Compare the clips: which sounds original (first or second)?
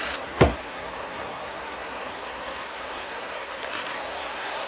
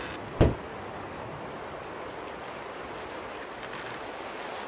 second